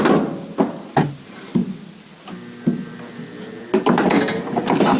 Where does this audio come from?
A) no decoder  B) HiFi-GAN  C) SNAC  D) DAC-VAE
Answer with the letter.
A